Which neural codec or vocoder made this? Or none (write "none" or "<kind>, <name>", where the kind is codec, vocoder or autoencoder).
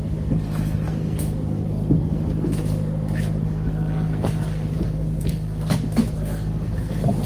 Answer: codec, SNAC